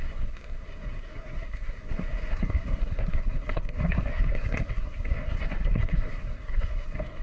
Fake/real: fake